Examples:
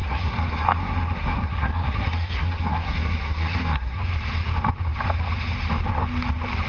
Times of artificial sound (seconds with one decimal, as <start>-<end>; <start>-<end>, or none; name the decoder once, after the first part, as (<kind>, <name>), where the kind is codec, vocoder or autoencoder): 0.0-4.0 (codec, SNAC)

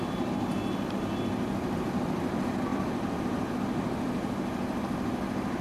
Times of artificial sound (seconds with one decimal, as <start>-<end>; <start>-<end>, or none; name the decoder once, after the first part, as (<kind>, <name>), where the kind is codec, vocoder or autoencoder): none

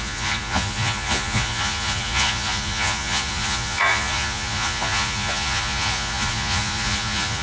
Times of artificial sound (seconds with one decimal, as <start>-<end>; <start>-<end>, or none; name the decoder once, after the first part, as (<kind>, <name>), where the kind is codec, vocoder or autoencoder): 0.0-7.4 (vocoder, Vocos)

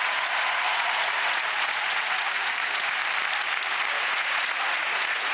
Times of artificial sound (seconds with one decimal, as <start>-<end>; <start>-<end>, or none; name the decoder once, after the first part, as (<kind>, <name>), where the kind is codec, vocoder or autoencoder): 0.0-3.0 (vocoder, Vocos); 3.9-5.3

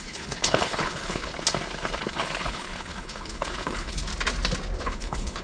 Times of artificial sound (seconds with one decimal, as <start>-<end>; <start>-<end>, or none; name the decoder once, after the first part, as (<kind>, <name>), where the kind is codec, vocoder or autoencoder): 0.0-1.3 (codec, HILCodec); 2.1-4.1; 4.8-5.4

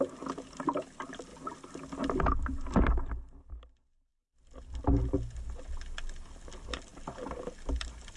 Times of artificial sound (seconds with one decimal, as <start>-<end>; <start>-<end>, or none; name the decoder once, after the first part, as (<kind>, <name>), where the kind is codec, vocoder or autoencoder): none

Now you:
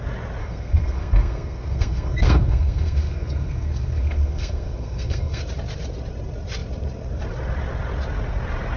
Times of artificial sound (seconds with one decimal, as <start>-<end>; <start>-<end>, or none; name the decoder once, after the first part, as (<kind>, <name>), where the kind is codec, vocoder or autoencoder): 0.4-5.4 (codec, SNAC)